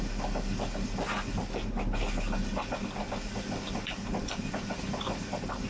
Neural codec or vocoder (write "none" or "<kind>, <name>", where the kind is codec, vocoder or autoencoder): none